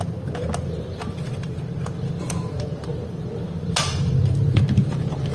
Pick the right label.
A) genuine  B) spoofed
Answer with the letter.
B